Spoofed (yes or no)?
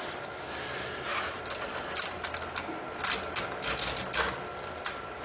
no